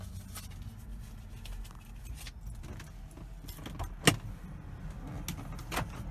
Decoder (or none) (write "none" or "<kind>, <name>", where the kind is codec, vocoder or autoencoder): none